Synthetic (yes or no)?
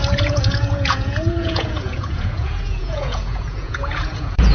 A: yes